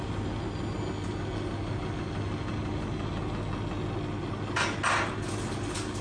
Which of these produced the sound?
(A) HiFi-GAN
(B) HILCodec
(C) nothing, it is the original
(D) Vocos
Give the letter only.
C